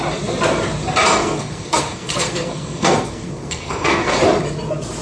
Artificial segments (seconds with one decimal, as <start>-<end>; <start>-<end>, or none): 1.2-4.2